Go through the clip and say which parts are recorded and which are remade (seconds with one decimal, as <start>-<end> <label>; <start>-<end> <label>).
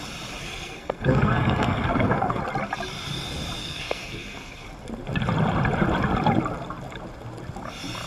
0.0-0.4 recorded; 0.4-2.4 remade; 2.4-3.6 recorded; 3.6-4.7 remade; 4.7-8.1 recorded